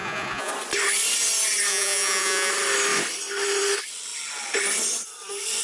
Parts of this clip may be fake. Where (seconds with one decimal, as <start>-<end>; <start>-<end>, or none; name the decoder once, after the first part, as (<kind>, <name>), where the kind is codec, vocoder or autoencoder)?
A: 0.0-0.5 (vocoder, Vocos); 1.7-2.5